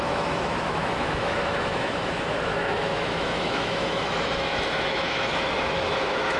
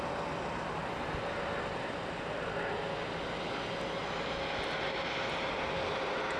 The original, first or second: second